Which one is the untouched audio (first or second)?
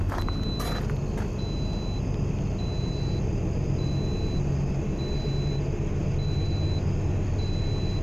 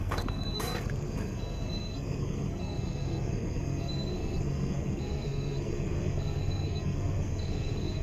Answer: first